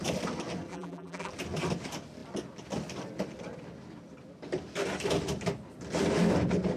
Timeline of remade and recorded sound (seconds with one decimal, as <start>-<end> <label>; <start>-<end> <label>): 0.0-0.7 recorded; 0.7-1.3 remade; 1.3-6.8 recorded